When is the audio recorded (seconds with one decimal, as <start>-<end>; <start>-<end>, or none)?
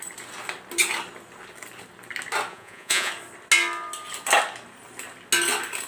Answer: 0.0-2.5; 3.1-5.9